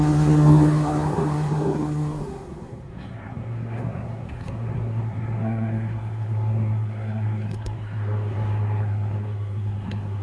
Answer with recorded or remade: remade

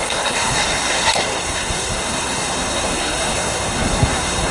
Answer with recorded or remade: remade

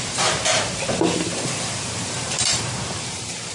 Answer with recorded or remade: remade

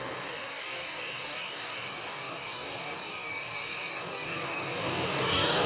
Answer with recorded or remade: remade